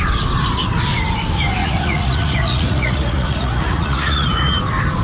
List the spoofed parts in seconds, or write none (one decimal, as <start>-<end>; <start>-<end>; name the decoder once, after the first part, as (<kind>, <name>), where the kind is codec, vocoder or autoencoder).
1.6-4.6 (vocoder, Vocos)